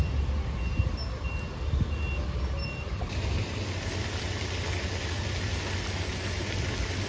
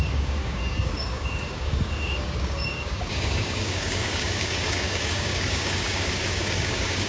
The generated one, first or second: second